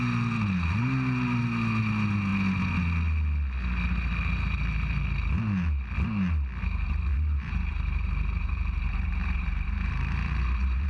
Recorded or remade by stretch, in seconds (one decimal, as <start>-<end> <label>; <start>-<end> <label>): 0.0-7.1 recorded; 7.1-10.9 remade